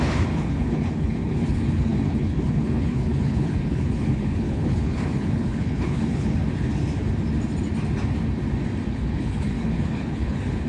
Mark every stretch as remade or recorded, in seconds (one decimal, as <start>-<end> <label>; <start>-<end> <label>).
0.0-6.4 remade; 6.4-8.9 recorded; 8.9-10.7 remade